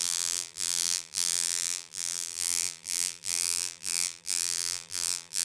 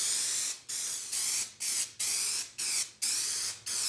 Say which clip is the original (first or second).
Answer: second